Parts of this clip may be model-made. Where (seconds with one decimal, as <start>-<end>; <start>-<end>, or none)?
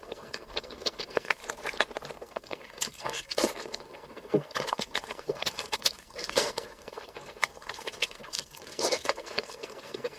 0.0-1.4; 2.1-10.2